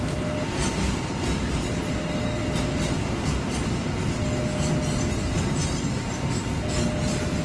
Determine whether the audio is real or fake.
real